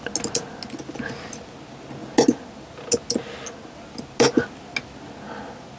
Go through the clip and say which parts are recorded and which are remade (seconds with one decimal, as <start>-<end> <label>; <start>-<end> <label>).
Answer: 0.0-5.8 recorded